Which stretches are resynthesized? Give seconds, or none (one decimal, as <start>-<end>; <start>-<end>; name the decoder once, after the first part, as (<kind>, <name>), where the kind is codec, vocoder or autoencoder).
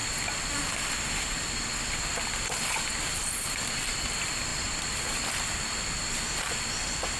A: none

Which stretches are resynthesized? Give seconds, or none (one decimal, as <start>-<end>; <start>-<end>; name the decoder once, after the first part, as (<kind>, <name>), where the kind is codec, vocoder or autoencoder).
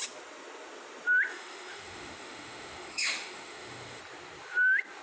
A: 1.3-4.0 (autoencoder, DAC-VAE)